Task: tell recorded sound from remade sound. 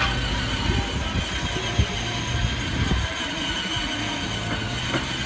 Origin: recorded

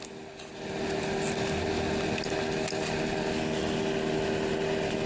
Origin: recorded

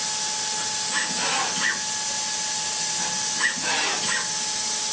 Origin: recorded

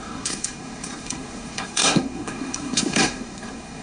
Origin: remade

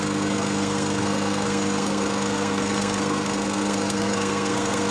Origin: remade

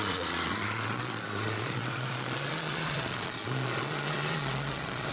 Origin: remade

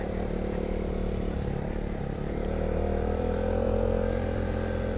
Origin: remade